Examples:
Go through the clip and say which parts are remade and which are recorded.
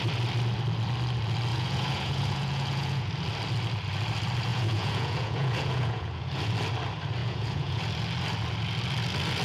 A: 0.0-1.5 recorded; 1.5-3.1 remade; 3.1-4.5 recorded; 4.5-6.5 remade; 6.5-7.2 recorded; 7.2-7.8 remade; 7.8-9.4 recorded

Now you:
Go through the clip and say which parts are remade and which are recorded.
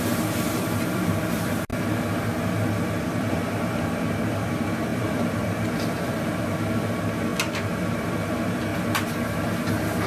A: 0.0-1.7 remade; 1.7-2.9 recorded; 2.9-7.3 remade; 7.3-7.9 recorded; 7.9-8.7 remade; 8.7-10.1 recorded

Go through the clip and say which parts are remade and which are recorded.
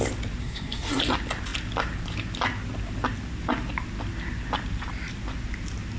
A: 0.0-0.4 recorded; 0.4-1.0 remade; 1.0-6.0 recorded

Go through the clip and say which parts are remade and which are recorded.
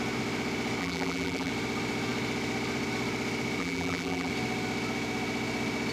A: 0.0-0.8 recorded; 0.8-1.5 remade; 1.5-3.6 recorded; 3.6-4.3 remade; 4.3-5.9 recorded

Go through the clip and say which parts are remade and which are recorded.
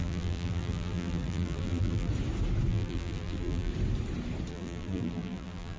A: 0.0-2.1 remade; 2.1-2.7 recorded; 2.7-3.7 remade; 3.7-4.5 recorded; 4.5-5.8 remade